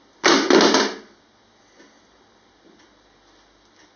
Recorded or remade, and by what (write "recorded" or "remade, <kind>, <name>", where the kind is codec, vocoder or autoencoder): recorded